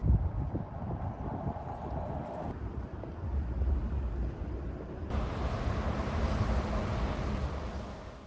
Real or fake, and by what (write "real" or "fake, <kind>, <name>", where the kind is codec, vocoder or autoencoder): real